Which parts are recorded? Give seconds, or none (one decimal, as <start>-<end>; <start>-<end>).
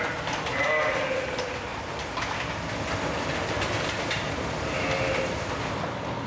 0.0-6.3